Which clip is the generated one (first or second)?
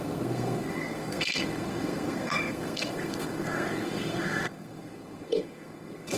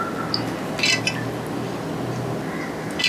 first